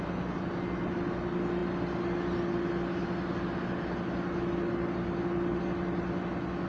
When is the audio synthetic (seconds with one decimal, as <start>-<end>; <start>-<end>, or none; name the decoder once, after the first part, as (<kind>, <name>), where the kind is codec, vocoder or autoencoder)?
none